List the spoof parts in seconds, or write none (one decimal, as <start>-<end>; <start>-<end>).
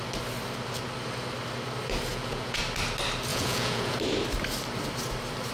2.1-2.6; 3.3-4.0